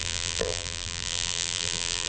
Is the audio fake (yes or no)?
yes